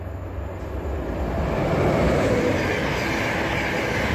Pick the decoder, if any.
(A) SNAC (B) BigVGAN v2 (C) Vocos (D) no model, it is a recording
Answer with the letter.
D